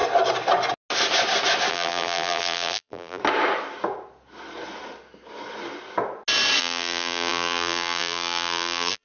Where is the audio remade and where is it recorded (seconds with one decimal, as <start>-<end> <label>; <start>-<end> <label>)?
0.0-1.7 recorded; 1.7-3.2 remade; 3.2-6.6 recorded; 6.6-9.0 remade